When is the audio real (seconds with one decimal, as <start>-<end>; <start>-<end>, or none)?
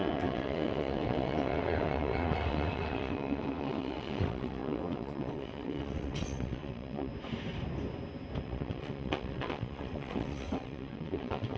7.1-8.4